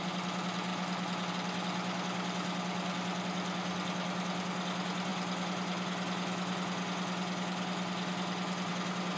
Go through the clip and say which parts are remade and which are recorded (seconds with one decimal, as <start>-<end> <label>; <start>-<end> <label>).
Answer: 0.0-9.2 recorded